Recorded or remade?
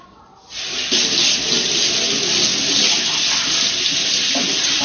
recorded